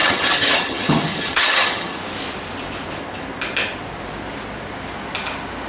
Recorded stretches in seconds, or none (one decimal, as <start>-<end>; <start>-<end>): 2.0-5.7